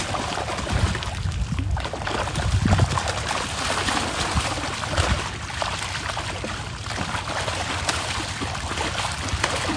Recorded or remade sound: recorded